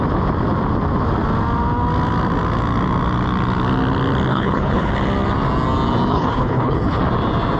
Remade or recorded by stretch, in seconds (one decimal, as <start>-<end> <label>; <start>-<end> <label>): 0.0-4.3 recorded; 4.3-4.9 remade; 4.9-6.1 recorded; 6.1-7.0 remade; 7.0-7.6 recorded